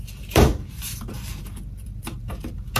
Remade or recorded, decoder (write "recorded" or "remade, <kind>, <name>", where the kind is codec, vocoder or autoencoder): remade, vocoder, BigVGAN v2